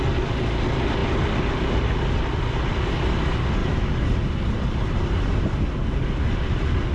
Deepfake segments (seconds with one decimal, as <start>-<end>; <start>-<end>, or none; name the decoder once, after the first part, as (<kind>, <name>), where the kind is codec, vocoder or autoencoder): 3.6-5.3 (vocoder, BigVGAN v2)